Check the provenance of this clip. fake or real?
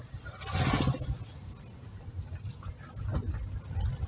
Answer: real